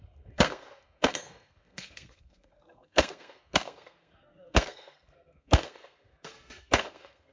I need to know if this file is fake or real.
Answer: fake